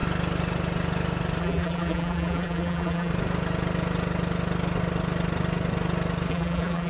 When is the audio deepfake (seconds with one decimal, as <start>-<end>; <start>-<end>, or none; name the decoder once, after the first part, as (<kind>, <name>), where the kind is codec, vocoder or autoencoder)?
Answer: 1.4-3.1 (vocoder, BigVGAN v2); 6.3-6.9